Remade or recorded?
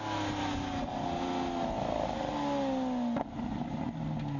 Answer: recorded